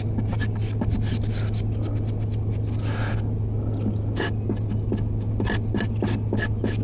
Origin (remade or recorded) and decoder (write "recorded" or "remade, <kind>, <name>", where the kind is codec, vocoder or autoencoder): recorded